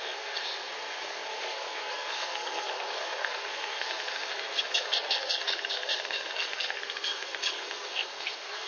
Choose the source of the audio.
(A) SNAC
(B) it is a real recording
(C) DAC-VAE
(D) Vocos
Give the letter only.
A